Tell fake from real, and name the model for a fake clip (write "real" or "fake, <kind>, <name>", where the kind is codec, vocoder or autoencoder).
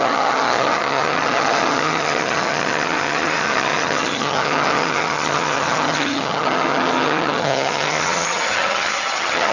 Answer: fake, vocoder, HiFi-GAN